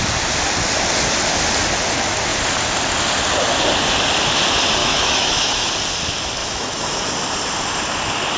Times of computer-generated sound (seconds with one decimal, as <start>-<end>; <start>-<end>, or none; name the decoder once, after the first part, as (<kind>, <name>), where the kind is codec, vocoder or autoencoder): 4.8-5.7 (autoencoder, DAC-VAE); 6.4-7.1